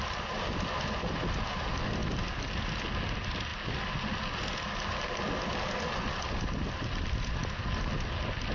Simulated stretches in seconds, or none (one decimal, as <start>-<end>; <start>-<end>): none